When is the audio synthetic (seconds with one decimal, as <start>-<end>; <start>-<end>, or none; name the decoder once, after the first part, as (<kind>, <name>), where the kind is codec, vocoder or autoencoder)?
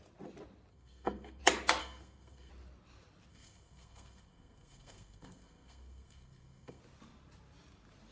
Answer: 0.7-1.4 (codec, SNAC); 1.8-2.5; 3.3-6.8